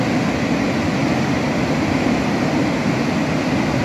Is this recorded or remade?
recorded